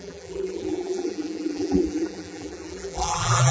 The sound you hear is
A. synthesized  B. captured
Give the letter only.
A